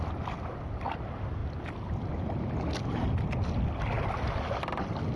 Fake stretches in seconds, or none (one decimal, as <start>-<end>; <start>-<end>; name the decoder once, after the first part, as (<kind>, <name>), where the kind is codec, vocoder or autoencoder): none